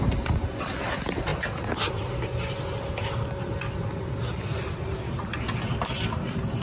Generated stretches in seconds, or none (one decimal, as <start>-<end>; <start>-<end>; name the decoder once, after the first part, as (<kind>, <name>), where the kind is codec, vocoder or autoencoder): none